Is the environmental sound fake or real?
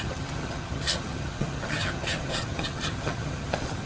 fake